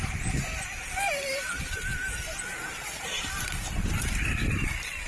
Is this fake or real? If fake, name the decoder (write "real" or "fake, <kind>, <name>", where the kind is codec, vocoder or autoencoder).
fake, vocoder, BigVGAN v2